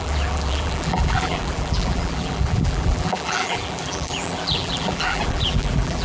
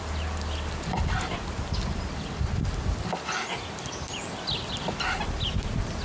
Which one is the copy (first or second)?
first